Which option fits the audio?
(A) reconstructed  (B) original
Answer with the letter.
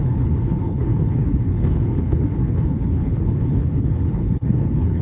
A